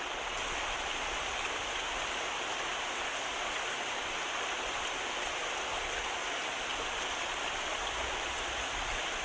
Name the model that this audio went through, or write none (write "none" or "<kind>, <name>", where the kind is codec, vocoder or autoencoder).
none